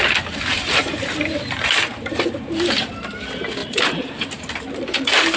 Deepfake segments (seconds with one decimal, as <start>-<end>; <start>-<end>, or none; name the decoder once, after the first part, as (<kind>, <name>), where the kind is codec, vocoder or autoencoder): 0.5-2.9 (vocoder, BigVGAN v2); 3.6-5.4